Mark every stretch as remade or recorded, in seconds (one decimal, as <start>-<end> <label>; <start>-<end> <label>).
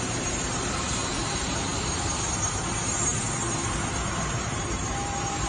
0.0-1.7 remade; 1.7-4.1 recorded; 4.1-5.5 remade